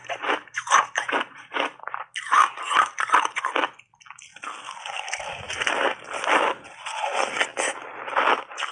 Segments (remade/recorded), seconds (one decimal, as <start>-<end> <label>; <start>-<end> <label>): 0.0-3.4 remade; 3.4-8.7 recorded